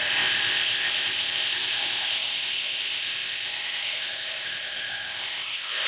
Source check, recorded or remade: remade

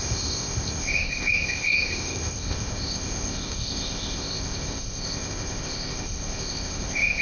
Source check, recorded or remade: remade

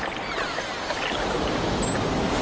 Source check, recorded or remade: recorded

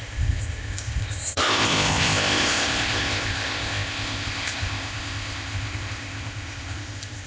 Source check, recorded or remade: remade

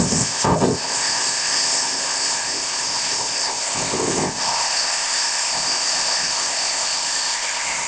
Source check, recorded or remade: remade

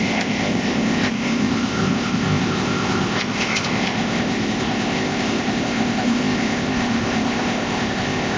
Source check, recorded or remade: remade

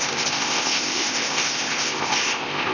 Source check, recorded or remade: remade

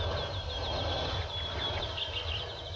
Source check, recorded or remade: recorded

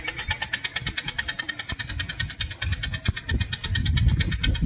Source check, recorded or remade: recorded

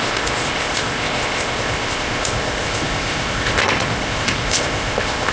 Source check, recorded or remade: remade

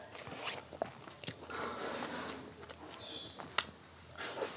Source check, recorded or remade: recorded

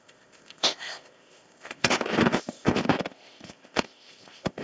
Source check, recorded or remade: remade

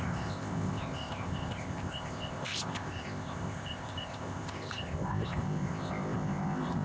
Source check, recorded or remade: remade